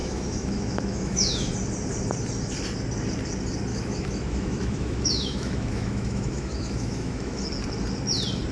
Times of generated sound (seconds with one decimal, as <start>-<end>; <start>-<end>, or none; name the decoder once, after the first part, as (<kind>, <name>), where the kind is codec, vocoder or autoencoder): 0.0-1.5 (autoencoder, DAC-VAE); 3.7-7.4